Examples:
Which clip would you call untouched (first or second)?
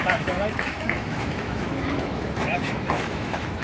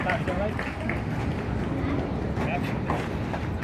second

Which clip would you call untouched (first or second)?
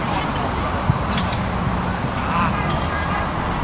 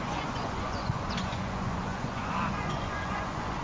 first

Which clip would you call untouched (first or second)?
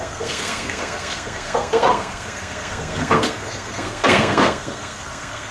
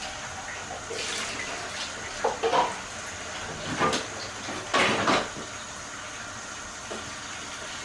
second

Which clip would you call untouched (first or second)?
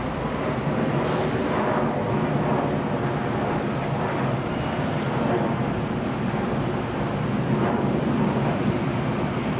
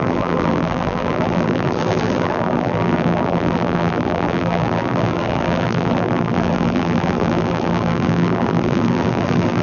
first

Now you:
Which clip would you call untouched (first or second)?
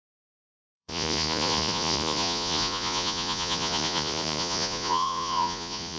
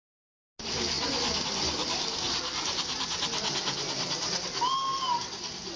second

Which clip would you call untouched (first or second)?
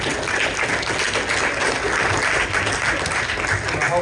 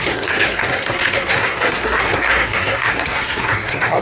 first